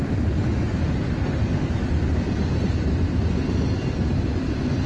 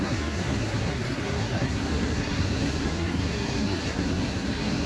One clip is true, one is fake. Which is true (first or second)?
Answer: first